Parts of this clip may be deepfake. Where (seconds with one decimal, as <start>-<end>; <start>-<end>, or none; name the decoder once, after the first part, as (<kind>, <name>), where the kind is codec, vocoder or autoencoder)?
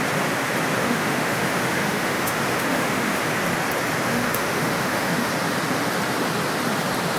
0.8-3.3 (autoencoder, DAC-VAE); 4.1-5.3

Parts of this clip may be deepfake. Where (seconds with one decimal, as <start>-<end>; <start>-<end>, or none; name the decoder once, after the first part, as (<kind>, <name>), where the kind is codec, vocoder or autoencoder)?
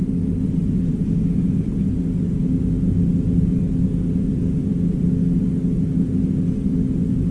none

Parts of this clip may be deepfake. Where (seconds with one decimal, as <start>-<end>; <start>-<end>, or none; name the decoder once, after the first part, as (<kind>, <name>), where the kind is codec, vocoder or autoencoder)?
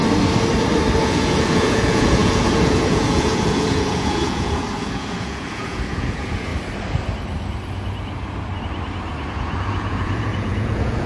1.0-6.5 (vocoder, Vocos); 9.3-11.1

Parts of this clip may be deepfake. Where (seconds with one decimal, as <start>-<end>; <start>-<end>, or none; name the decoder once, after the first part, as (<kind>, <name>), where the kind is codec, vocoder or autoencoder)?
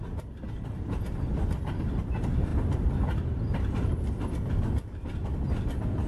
none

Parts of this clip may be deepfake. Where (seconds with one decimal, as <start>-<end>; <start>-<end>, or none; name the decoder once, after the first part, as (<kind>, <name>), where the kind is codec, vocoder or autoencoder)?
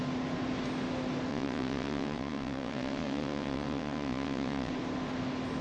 1.3-4.7 (vocoder, WaveNeXt)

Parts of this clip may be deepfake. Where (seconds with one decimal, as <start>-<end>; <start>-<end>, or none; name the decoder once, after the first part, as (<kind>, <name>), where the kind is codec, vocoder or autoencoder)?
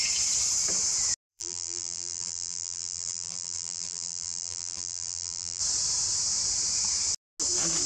1.3-5.6 (vocoder, BigVGAN v2)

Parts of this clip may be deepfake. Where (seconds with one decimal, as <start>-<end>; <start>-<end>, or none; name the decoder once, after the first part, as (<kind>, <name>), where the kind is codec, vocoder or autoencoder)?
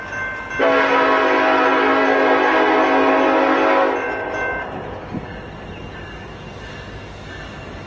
none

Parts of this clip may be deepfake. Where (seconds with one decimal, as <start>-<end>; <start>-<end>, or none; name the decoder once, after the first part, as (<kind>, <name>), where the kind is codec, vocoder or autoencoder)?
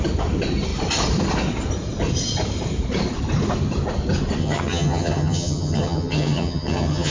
4.4-7.1 (vocoder, HiFi-GAN)